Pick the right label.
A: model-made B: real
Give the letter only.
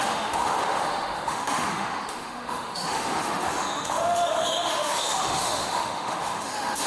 A